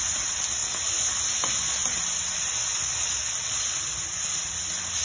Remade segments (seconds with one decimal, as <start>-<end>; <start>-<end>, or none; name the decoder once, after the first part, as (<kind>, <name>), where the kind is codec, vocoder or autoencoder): none